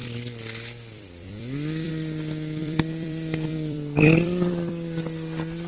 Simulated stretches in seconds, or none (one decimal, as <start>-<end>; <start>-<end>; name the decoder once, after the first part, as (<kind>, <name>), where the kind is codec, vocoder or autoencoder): 0.0-1.9 (vocoder, BigVGAN v2); 2.6-4.7